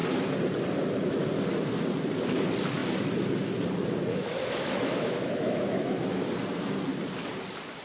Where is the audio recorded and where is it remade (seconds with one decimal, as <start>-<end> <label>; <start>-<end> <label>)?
0.0-4.1 recorded; 4.1-6.3 remade; 6.3-7.8 recorded